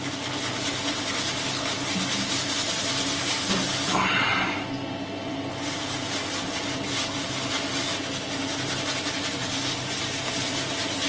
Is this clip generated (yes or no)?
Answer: no